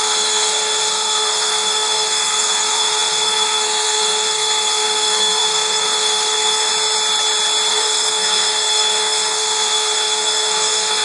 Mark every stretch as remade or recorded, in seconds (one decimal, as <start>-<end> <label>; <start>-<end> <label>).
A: 0.0-6.7 remade; 6.7-7.7 recorded; 7.7-11.0 remade